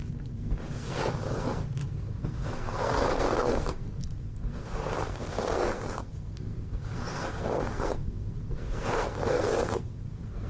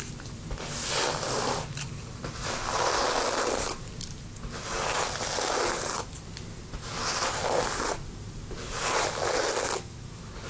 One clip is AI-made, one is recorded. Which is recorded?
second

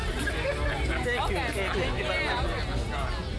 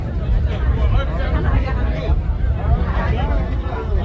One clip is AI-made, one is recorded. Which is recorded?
first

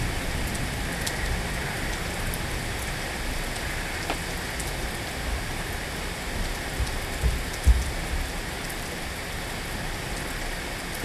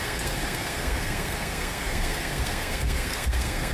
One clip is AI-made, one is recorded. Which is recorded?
first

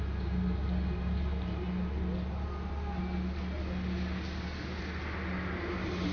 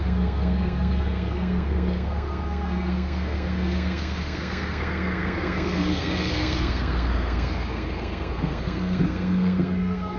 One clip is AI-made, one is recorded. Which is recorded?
first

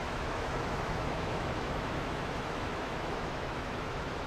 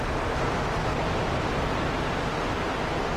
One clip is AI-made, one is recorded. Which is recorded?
second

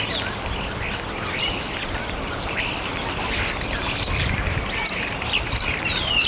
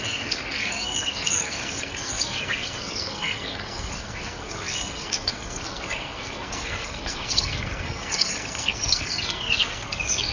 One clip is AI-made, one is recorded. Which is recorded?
first